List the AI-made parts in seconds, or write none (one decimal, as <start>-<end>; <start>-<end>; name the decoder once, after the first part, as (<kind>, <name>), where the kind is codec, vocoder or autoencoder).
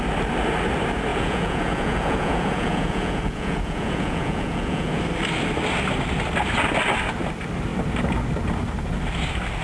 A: 1.1-5.0 (vocoder, Vocos)